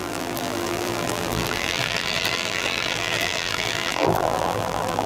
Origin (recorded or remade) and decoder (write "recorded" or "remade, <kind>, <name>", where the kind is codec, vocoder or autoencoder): remade, vocoder, BigVGAN v2